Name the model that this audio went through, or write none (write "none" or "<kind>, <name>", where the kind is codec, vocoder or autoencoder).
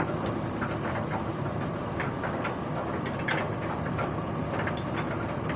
none